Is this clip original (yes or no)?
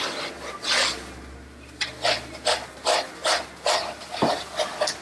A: yes